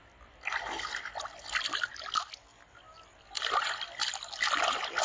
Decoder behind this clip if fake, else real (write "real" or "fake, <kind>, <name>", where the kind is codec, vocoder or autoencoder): real